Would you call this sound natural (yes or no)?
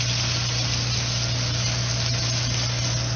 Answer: yes